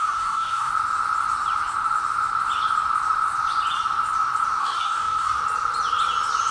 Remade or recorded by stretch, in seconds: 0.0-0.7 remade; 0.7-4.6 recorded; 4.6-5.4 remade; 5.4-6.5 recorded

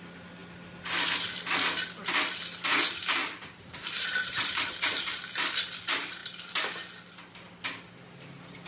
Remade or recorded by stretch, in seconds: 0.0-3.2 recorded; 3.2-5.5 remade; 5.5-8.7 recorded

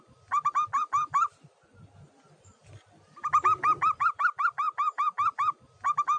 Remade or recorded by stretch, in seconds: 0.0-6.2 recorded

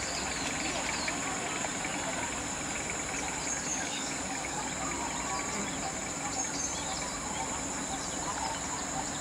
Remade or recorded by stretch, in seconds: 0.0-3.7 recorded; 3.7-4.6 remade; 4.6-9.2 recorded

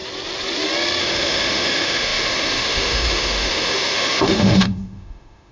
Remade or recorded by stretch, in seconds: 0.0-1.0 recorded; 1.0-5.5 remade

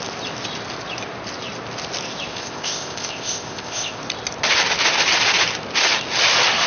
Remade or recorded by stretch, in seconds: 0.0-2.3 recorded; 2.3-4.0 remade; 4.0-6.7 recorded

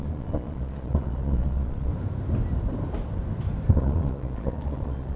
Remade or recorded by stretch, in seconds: 0.0-1.9 remade; 1.9-3.7 recorded; 3.7-5.2 remade